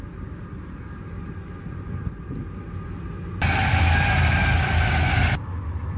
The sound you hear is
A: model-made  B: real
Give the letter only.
B